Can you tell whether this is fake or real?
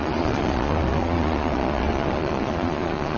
fake